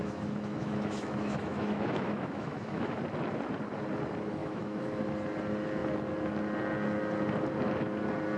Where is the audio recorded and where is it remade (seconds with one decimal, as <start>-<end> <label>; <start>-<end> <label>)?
0.0-3.0 remade; 3.0-4.4 recorded; 4.4-5.0 remade; 5.0-8.4 recorded